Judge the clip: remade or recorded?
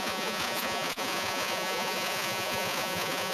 remade